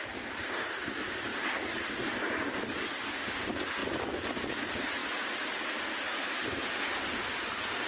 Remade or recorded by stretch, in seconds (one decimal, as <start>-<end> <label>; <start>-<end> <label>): 0.0-1.3 recorded; 1.3-1.9 remade; 1.9-3.8 recorded; 3.8-4.4 remade; 4.4-7.9 recorded